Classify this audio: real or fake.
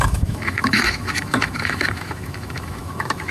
fake